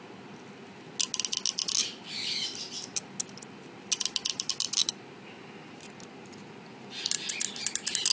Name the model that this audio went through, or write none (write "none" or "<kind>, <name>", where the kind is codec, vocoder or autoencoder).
none